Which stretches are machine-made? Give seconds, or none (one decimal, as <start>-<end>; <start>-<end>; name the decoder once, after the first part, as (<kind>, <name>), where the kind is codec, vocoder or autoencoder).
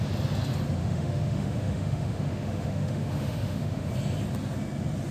0.8-3.9 (autoencoder, DAC-VAE)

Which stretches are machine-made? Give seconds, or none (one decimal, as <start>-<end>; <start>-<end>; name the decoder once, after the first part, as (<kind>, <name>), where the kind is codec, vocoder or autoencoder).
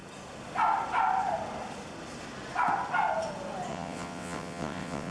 3.7-5.1 (vocoder, WaveNeXt)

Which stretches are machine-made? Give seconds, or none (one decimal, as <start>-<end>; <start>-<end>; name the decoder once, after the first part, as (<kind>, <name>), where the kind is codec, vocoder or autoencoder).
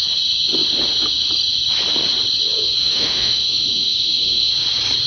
2.8-4.5 (autoencoder, DAC-VAE)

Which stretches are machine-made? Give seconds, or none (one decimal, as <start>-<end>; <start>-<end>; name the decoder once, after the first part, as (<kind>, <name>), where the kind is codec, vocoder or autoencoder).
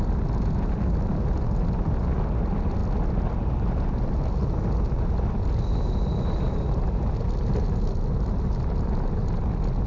none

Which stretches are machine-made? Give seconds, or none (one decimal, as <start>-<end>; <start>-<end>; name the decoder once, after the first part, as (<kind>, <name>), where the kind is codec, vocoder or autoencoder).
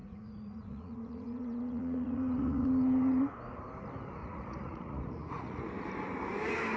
0.0-3.2 (vocoder, Vocos); 4.2-5.7